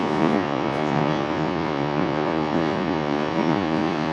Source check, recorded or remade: remade